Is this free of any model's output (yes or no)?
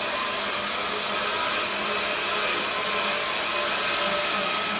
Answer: yes